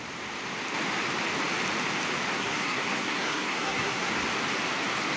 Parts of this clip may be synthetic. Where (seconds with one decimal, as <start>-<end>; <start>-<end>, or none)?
2.3-4.1

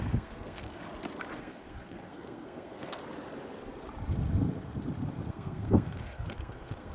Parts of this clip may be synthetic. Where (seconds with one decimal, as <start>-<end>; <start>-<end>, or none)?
0.0-0.8; 1.4-3.0; 5.3-6.9